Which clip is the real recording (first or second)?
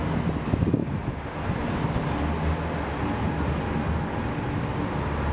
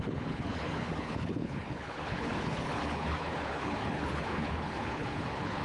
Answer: first